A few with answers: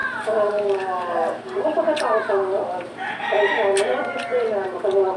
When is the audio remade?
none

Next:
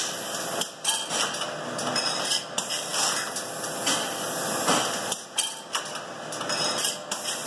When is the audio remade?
none

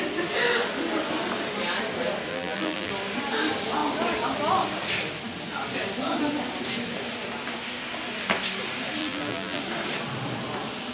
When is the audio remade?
2.3-2.9; 9.0-9.6

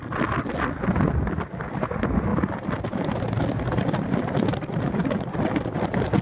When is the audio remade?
2.3-6.2